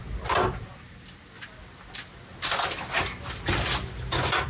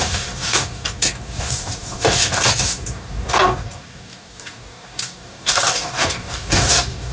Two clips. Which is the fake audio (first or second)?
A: second